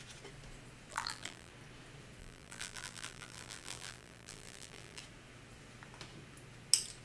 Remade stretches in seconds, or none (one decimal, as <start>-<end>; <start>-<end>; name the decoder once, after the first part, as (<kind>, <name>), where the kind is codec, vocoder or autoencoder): 0.9-1.5 (vocoder, BigVGAN v2); 2.2-5.0

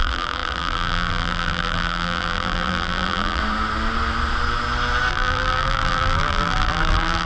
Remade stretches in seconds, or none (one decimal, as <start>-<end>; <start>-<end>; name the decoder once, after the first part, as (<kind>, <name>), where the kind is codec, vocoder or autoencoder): 0.0-3.4 (vocoder, BigVGAN v2); 5.1-7.2

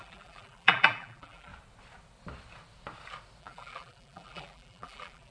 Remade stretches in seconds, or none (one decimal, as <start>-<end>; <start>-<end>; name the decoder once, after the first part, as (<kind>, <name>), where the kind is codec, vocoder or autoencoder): 0.0-1.5 (vocoder, BigVGAN v2); 3.4-5.3

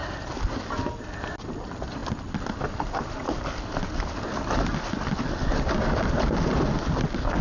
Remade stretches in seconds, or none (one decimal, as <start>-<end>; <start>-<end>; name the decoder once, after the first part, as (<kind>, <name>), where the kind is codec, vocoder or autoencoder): none

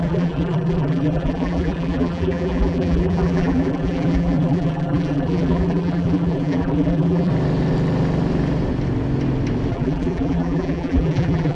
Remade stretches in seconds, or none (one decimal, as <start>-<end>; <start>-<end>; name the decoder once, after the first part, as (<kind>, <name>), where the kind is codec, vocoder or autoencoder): 0.0-7.3 (vocoder, BigVGAN v2); 9.7-11.6

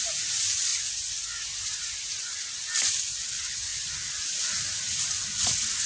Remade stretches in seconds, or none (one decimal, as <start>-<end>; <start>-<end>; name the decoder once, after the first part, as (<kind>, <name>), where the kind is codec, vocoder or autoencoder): 0.7-1.3 (vocoder, BigVGAN v2); 2.1-3.0; 3.7-5.4